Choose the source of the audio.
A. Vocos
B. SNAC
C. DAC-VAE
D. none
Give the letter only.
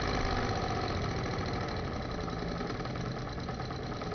D